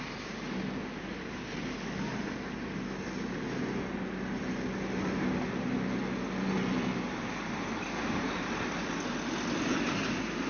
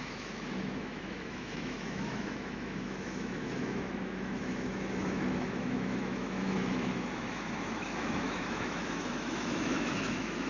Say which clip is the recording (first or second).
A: first